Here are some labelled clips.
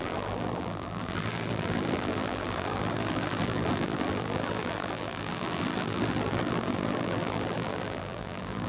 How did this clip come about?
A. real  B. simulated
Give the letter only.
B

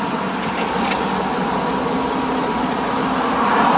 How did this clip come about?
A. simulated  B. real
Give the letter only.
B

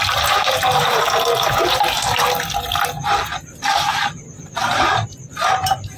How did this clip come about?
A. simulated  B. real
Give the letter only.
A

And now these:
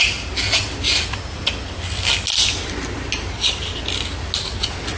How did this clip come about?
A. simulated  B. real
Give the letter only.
B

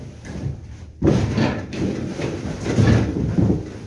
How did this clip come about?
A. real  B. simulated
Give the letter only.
B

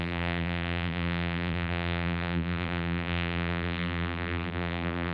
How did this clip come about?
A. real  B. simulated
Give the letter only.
B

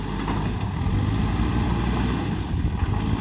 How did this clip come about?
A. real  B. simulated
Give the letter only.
A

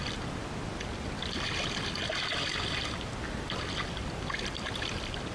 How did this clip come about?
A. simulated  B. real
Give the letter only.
B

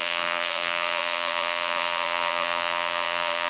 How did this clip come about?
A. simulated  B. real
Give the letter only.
A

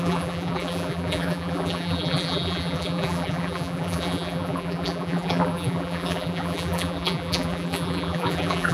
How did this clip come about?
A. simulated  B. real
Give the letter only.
A